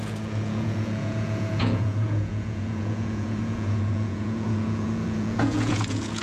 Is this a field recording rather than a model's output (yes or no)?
no